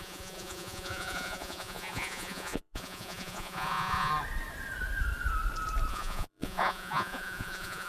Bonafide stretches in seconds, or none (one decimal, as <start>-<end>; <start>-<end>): 4.1-5.9